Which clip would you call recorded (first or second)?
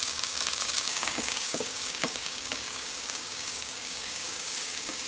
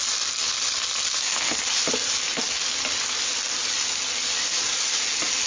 second